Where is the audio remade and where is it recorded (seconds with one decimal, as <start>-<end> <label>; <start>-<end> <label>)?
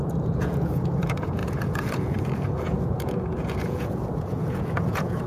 0.0-5.3 remade